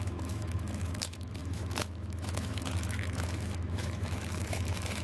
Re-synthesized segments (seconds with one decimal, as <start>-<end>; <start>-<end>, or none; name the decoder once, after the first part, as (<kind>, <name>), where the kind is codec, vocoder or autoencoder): 0.0-5.0 (autoencoder, DAC-VAE)